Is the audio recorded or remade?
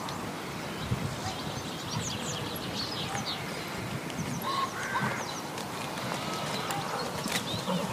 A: recorded